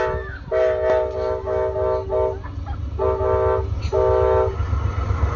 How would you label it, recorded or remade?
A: recorded